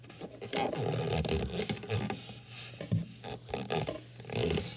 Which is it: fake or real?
real